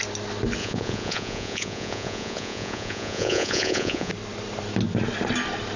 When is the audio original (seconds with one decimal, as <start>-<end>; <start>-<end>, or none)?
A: 0.0-0.6; 4.1-5.8